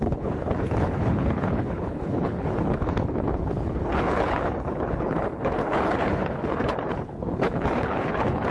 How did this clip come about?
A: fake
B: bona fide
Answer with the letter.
A